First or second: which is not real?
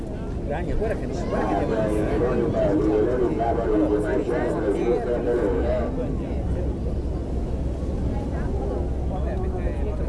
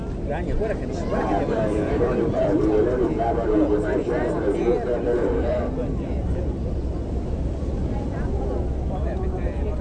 second